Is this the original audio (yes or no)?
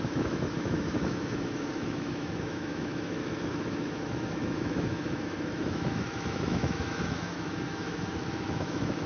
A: no